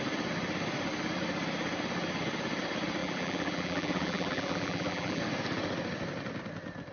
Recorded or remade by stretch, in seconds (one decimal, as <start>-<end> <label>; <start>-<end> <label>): 0.0-3.0 recorded; 3.0-5.2 remade; 5.2-6.9 recorded